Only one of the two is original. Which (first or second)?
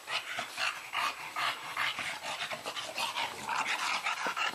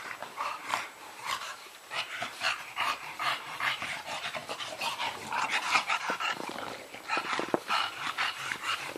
first